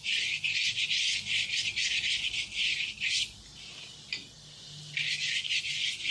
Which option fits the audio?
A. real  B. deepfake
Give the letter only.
A